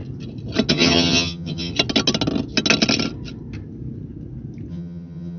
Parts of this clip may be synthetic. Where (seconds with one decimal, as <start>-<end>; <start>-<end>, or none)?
0.7-1.7; 4.7-5.4